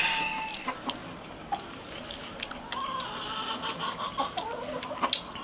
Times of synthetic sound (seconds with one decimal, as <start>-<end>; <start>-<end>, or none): 1.0-2.1